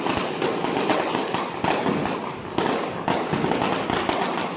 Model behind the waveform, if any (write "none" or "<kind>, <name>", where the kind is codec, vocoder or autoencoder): none